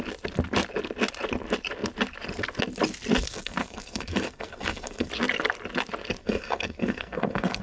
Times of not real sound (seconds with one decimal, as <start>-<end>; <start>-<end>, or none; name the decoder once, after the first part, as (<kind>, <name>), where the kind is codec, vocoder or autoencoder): 3.2-5.1 (codec, SNAC); 6.2-7.6

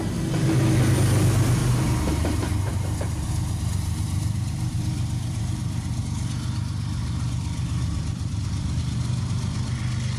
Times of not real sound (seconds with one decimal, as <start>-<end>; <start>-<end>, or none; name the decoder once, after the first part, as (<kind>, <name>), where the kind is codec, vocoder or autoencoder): 1.6-6.0 (vocoder, BigVGAN v2); 7.0-8.8

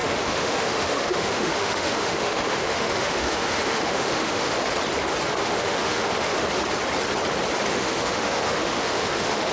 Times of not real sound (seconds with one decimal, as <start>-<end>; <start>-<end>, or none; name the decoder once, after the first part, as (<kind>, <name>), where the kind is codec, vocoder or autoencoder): 0.0-4.6 (autoencoder, DAC-VAE); 5.4-6.4; 7.7-9.5